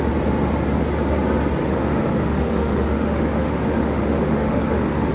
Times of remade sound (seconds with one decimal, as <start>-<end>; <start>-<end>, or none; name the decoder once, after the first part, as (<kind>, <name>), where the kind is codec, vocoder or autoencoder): 1.6-5.1 (autoencoder, DAC-VAE)

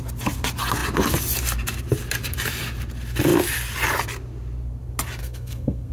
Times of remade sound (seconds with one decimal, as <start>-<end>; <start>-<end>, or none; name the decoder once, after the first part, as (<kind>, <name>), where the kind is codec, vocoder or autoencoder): 5.2-5.9 (codec, SNAC)

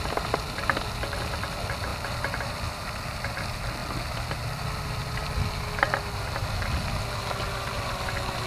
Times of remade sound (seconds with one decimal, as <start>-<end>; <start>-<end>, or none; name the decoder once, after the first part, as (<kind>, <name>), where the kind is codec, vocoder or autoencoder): none